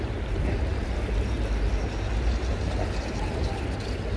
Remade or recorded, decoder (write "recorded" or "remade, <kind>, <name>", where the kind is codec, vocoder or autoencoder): recorded